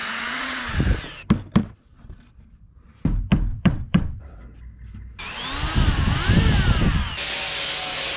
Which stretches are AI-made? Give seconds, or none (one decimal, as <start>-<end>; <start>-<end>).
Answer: 0.0-0.6; 1.6-2.1; 3.5-4.4